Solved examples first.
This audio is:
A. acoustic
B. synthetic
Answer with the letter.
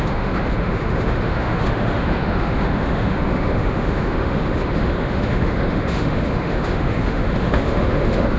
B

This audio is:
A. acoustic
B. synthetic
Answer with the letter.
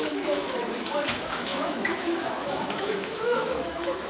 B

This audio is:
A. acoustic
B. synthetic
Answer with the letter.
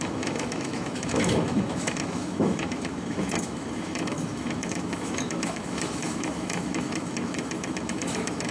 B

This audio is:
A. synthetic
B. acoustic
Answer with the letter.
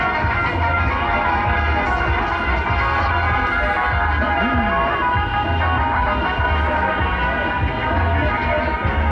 B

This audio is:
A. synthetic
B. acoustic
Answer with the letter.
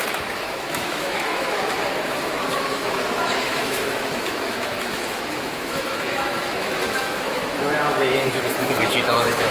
A